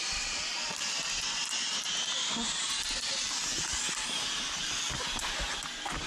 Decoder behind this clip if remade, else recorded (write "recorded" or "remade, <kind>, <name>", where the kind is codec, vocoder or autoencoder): recorded